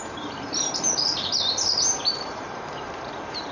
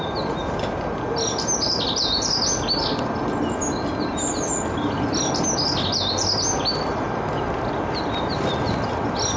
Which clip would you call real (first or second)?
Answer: second